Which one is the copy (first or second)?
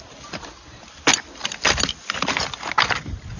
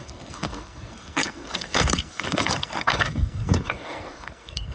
second